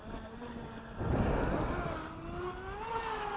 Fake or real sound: real